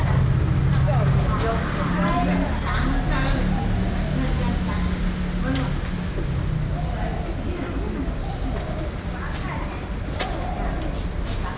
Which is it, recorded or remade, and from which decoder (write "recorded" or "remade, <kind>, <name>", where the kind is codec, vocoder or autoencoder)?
recorded